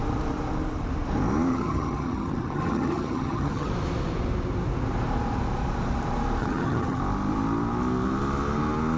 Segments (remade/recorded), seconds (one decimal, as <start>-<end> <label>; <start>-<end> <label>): 0.0-1.5 recorded; 1.5-3.7 remade; 3.7-6.4 recorded; 6.4-7.0 remade; 7.0-9.0 recorded